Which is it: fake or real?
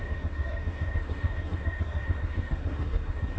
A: fake